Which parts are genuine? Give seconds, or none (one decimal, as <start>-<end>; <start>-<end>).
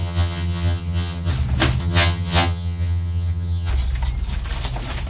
1.3-1.8; 3.7-5.1